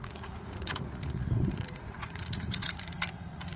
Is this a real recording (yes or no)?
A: no